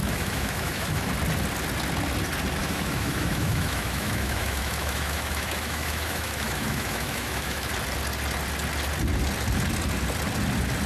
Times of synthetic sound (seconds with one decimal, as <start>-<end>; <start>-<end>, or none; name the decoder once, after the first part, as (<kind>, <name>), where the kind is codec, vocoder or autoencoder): 0.0-1.1 (autoencoder, DAC-VAE); 2.6-7.7